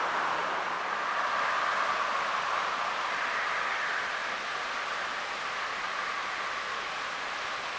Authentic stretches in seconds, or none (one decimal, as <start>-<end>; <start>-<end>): 0.0-7.8